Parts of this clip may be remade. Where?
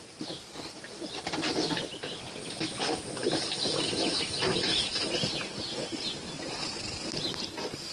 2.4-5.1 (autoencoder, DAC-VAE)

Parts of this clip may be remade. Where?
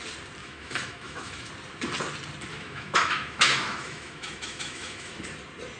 0.4-1.5 (autoencoder, DAC-VAE); 2.5-5.2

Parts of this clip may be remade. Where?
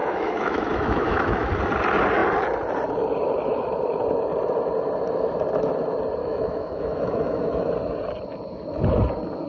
0.0-1.5 (autoencoder, DAC-VAE); 6.2-7.7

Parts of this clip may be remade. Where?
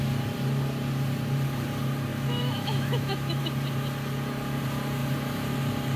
2.1-3.4 (autoencoder, DAC-VAE)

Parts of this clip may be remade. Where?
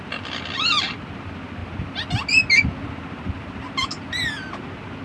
none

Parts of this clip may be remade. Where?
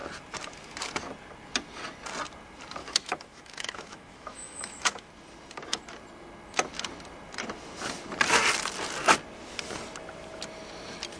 2.8-5.1 (autoencoder, DAC-VAE)